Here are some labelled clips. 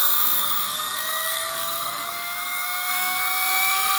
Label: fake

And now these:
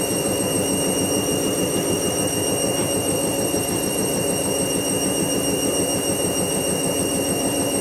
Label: fake